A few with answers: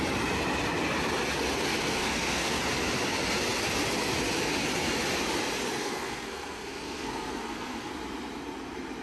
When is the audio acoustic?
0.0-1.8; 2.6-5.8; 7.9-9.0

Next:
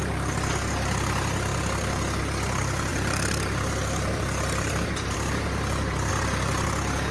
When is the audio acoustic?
0.0-2.9; 6.1-7.1